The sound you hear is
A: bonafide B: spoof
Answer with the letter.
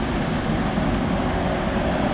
A